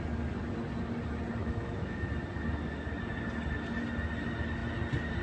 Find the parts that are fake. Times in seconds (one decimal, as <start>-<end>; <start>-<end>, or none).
1.4-2.1